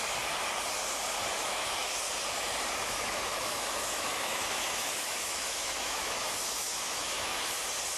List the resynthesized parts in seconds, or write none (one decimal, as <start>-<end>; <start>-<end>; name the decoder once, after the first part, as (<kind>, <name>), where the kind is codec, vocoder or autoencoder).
1.4-1.9 (autoencoder, DAC-VAE); 2.8-7.6